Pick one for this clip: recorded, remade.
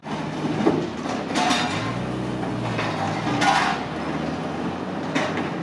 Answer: recorded